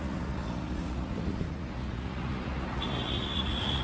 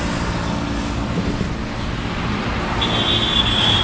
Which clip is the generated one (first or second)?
first